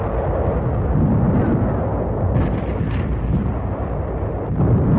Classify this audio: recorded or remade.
recorded